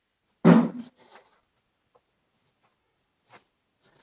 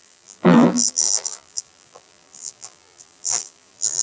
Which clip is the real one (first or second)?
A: first